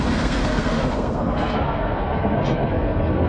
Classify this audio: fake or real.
fake